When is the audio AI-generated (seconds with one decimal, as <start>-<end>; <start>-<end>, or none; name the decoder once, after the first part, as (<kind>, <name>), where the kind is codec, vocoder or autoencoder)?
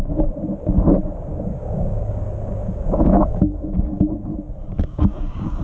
1.3-2.2 (codec, DAC); 2.6-4.1; 4.7-5.6